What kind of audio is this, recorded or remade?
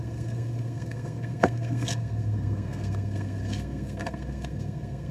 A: remade